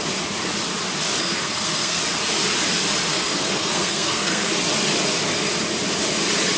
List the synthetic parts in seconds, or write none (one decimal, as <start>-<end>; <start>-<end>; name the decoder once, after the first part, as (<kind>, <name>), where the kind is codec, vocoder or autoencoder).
1.2-2.0 (codec, SNAC); 3.1-4.5